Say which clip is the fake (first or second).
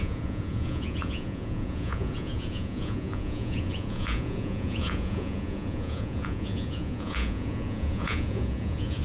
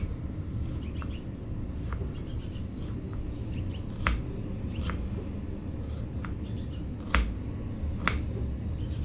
first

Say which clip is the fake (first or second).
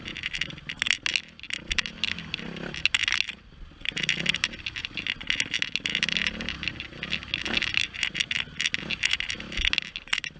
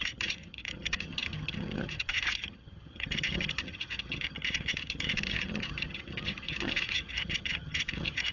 second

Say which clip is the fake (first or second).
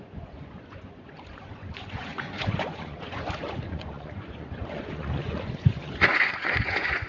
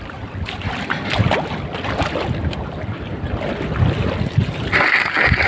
first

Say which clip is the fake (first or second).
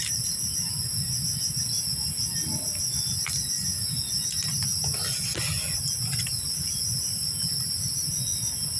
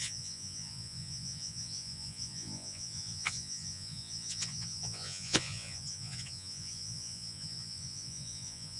second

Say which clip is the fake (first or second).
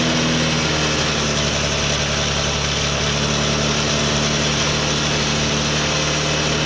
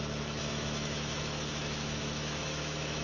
second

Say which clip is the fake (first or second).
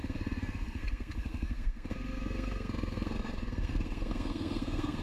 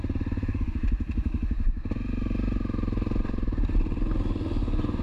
first